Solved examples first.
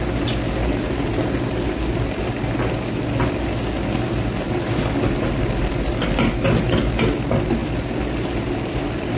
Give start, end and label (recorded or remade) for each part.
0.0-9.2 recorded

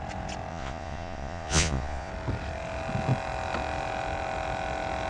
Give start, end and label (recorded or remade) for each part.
0.0-0.5 recorded; 0.5-2.1 remade; 2.1-5.1 recorded